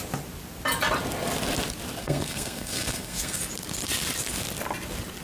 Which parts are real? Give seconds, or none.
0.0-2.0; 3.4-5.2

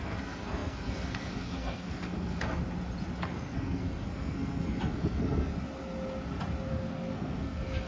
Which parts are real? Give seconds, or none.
2.6-3.2; 5.5-6.7

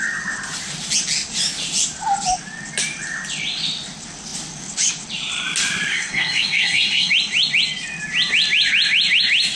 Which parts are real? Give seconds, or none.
0.0-5.9; 7.1-9.6

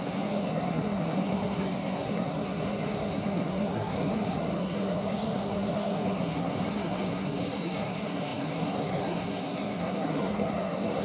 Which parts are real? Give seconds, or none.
none

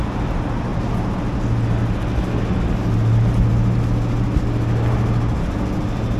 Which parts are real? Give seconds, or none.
0.0-6.2

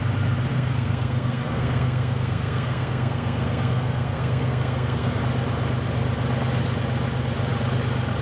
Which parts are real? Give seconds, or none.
0.0-0.5; 5.2-8.2

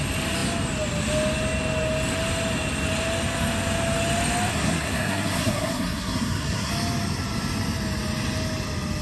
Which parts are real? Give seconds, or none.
0.0-4.5; 6.7-9.0